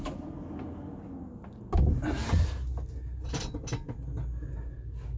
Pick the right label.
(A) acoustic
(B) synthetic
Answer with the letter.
A